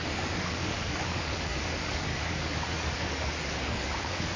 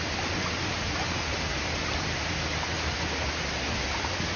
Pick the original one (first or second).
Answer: second